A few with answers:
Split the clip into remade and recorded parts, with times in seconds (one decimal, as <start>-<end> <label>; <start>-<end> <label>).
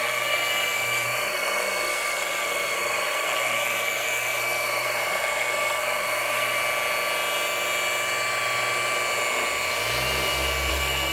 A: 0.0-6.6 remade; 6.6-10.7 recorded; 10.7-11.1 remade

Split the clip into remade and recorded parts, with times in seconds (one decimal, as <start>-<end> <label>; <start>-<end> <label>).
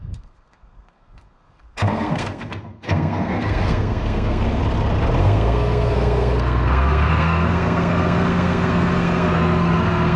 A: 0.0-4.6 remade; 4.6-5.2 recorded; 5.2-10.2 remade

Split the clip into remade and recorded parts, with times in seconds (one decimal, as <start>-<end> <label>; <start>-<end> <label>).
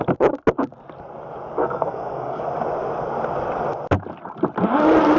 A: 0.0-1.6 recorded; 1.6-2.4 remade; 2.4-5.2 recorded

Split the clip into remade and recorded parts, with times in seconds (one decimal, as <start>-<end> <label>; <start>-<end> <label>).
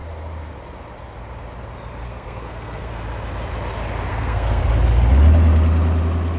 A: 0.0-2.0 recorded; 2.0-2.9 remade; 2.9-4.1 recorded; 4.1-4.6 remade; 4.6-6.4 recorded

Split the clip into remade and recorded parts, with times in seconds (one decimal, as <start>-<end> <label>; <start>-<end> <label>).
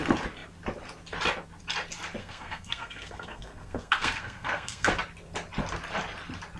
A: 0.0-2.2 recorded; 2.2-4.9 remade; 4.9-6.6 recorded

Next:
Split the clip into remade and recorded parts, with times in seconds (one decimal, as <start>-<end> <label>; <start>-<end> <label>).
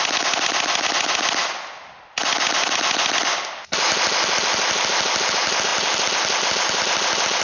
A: 0.0-7.4 recorded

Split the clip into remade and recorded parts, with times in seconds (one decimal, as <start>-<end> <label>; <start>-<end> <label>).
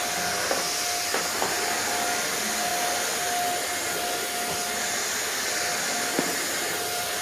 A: 0.0-7.2 recorded